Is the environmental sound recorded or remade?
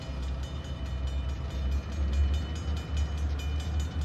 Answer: recorded